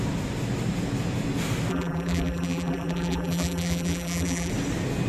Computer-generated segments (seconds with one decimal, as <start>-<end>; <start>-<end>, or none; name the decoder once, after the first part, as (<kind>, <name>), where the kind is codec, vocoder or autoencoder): 1.7-4.5 (vocoder, BigVGAN v2)